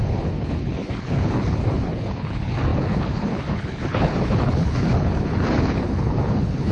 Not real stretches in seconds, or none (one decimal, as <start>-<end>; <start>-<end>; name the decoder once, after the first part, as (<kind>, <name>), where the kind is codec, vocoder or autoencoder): 0.0-6.7 (codec, HILCodec)